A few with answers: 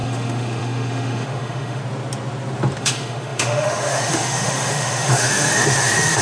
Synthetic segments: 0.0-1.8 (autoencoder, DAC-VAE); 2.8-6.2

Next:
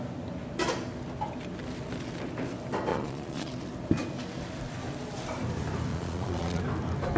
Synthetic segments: 2.9-3.5 (vocoder, Vocos); 5.9-6.6

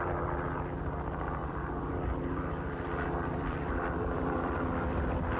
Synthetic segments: 1.4-4.2 (vocoder, BigVGAN v2)

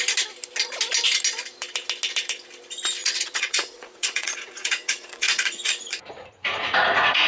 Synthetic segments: 3.0-7.3 (vocoder, Vocos)

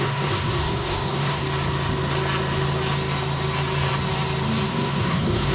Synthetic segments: 0.0-1.4 (codec, SNAC); 4.7-5.5

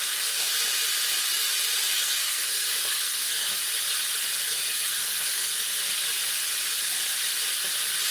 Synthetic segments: 0.0-0.5 (codec, SNAC); 1.9-3.5; 4.5-5.8